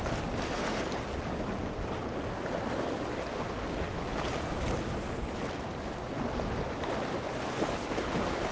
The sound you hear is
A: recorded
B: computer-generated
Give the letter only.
A